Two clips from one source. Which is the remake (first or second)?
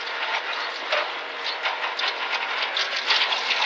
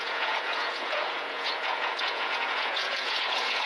second